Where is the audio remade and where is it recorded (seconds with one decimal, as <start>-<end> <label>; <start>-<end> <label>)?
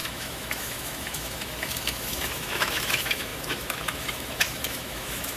0.0-5.4 remade